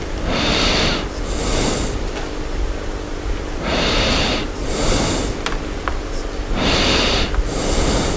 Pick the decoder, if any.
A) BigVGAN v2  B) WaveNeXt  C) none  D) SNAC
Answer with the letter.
C